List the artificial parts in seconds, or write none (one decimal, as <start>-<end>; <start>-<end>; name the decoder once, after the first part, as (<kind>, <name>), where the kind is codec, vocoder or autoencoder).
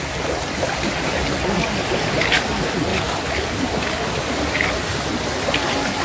none